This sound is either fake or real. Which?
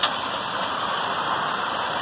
fake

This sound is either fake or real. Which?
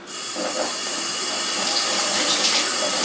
real